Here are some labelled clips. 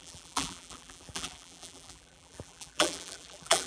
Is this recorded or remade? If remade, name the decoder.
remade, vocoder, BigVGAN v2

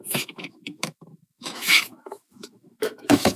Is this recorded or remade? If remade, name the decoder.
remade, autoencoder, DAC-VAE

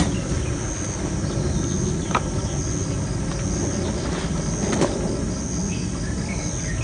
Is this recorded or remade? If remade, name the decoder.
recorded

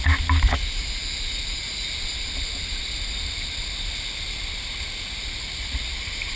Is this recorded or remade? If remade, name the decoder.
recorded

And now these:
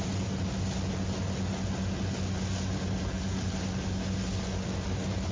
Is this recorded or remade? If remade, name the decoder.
recorded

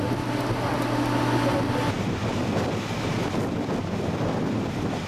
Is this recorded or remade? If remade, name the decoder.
recorded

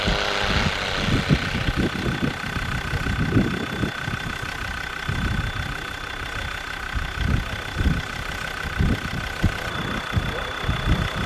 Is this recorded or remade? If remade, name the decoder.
recorded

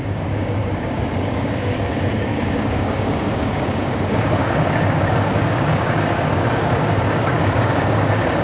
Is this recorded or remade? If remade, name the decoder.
remade, codec, DAC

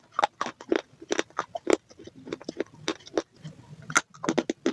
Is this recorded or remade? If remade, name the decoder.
recorded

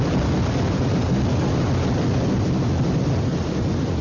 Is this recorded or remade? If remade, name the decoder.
recorded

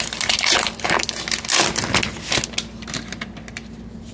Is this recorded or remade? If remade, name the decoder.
recorded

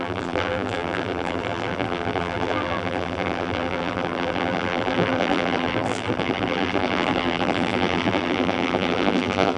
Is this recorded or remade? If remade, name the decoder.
remade, vocoder, BigVGAN v2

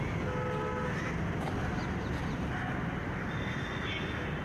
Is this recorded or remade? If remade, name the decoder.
recorded